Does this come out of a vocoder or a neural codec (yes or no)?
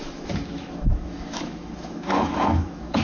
yes